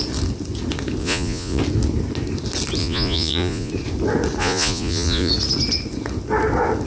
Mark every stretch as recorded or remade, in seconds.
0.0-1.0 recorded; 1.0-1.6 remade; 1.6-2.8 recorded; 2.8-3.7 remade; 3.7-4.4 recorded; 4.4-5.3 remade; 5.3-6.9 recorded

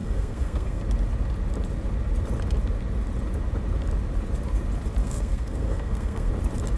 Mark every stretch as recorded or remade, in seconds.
0.0-0.8 remade; 0.8-5.0 recorded; 5.0-6.3 remade; 6.3-6.8 recorded